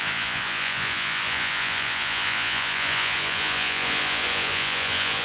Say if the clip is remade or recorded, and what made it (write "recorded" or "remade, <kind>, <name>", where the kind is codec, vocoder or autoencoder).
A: remade, vocoder, Vocos